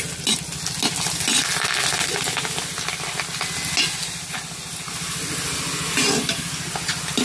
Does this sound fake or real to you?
real